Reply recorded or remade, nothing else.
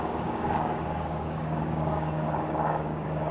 remade